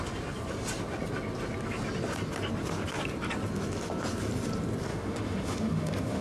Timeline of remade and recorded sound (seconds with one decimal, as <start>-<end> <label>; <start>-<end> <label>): 0.0-4.9 recorded; 4.9-6.2 remade

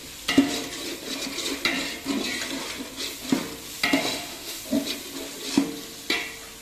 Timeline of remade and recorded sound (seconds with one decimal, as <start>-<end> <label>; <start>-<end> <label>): 0.0-4.0 recorded; 4.0-4.6 remade; 4.6-6.6 recorded

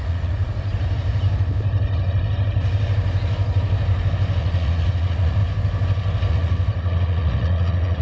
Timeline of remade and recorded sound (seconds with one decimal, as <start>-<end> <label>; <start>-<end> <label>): 0.0-0.7 remade; 0.7-4.4 recorded; 4.4-5.4 remade; 5.4-6.3 recorded; 6.3-8.0 remade

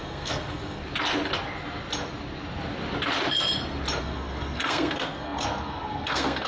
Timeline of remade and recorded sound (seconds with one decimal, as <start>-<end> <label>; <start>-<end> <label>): 0.0-0.8 remade; 0.8-4.0 recorded; 4.0-6.5 remade

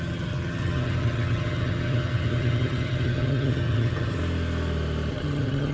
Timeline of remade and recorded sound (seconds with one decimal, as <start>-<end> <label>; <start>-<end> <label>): 0.0-4.2 remade; 4.2-5.1 recorded; 5.1-5.7 remade